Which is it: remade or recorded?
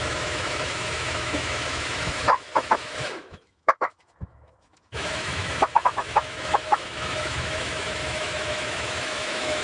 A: remade